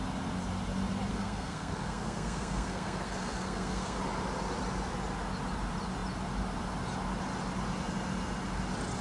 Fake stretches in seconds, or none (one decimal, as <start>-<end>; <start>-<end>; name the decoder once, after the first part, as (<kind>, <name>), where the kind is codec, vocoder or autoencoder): 1.1-4.0 (codec, SNAC)